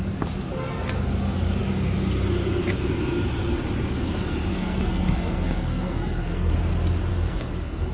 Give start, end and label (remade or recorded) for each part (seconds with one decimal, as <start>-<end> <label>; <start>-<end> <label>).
0.0-4.5 recorded; 4.5-6.5 remade; 6.5-7.1 recorded; 7.1-7.9 remade